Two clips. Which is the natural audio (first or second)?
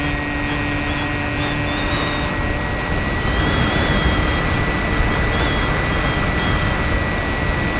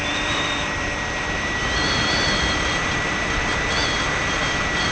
first